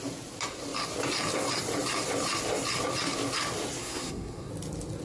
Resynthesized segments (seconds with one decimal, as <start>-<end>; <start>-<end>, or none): 3.8-4.5